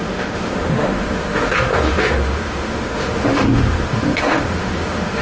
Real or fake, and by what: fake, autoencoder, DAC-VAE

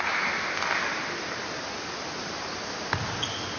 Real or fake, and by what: real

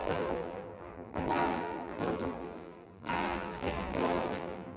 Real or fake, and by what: fake, vocoder, BigVGAN v2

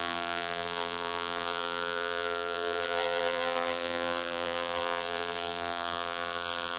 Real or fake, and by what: fake, vocoder, BigVGAN v2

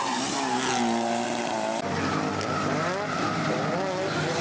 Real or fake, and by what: real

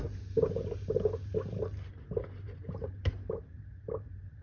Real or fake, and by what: fake, vocoder, BigVGAN v2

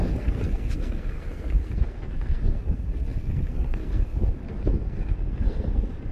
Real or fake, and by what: fake, codec, SNAC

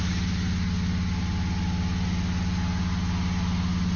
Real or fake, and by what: real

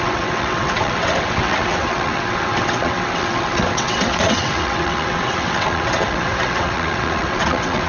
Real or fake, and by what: fake, vocoder, WaveNeXt